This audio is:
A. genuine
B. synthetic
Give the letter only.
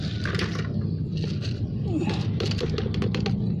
A